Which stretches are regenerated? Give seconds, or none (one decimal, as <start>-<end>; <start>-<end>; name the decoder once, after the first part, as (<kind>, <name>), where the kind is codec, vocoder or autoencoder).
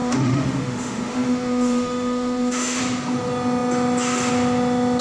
0.0-2.8 (autoencoder, DAC-VAE)